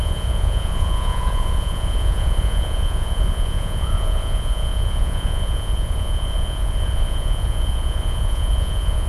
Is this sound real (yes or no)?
no